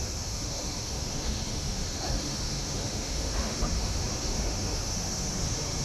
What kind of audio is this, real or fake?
fake